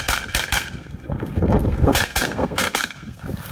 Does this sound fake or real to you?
fake